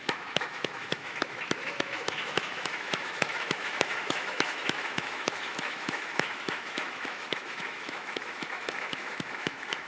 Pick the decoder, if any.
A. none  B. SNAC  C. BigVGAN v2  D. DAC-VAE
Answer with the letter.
D